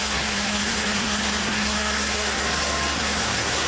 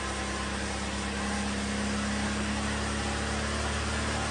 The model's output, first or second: first